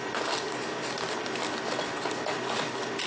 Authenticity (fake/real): real